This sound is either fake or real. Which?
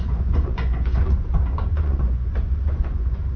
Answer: fake